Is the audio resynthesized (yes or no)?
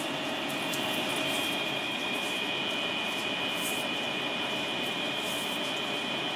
no